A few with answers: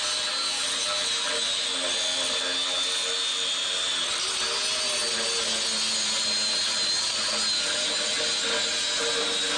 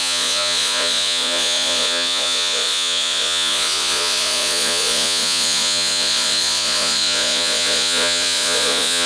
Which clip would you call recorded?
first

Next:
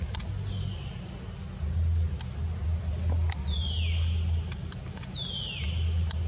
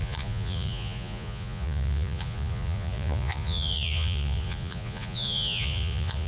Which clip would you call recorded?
first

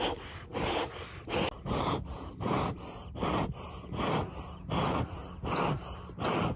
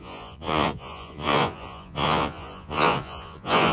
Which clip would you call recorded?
first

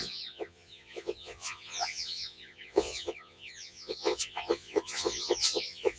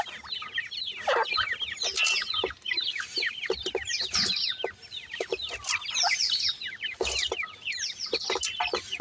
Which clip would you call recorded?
second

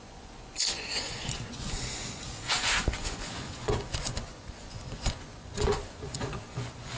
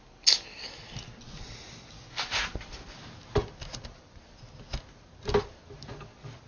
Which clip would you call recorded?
second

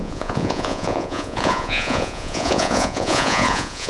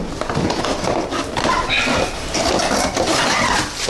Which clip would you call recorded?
second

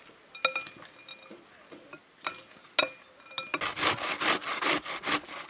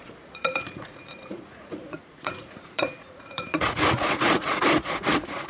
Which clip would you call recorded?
first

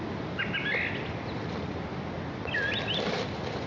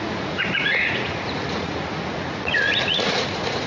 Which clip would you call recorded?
first